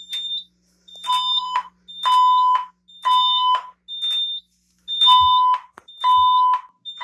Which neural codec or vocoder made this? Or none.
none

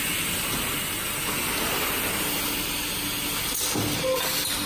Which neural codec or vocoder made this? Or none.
none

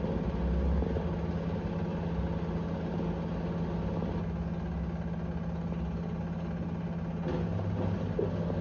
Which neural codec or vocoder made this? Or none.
none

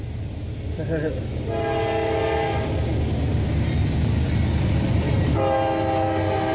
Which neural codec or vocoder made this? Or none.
none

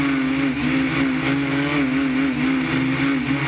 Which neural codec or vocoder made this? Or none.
none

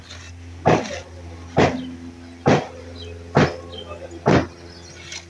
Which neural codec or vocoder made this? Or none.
none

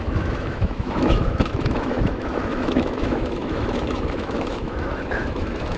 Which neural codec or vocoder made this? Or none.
autoencoder, DAC-VAE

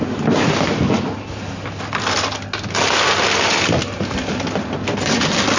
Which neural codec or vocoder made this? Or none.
none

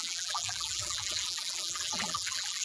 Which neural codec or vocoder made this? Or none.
vocoder, BigVGAN v2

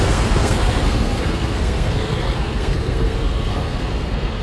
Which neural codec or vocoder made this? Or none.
codec, SNAC